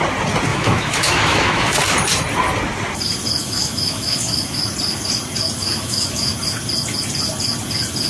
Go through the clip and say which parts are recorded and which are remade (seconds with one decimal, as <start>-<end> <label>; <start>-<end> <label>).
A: 0.0-0.5 recorded; 0.5-1.8 remade; 1.8-3.4 recorded; 3.4-4.6 remade; 4.6-5.6 recorded; 5.6-6.3 remade; 6.3-8.1 recorded